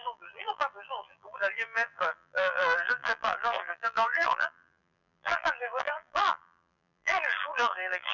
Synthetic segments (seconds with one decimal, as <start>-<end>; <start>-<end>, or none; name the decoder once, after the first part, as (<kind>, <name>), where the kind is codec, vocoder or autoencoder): 0.0-8.1 (vocoder, BigVGAN v2)